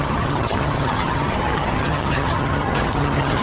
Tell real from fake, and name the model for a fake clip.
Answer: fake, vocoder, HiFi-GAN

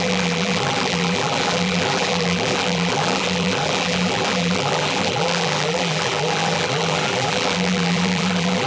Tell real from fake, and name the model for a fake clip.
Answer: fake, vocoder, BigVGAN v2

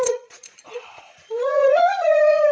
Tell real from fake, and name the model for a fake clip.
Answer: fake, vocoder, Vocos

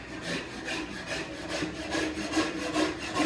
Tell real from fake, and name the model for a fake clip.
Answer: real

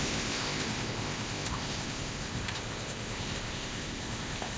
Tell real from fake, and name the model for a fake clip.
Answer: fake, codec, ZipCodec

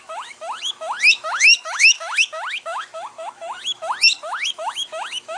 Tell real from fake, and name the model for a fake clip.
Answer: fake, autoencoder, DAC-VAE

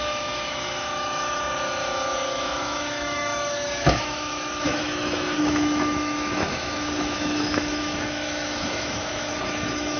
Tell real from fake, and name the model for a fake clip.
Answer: fake, autoencoder, DAC-VAE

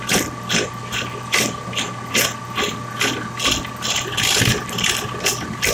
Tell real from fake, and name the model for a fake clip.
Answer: real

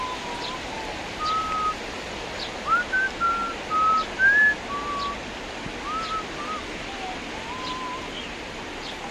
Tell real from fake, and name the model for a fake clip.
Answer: real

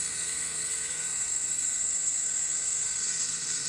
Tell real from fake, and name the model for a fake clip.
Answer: fake, codec, SNAC